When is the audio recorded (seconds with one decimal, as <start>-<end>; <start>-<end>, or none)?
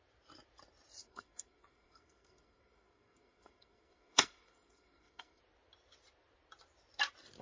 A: 0.0-1.0; 5.4-7.4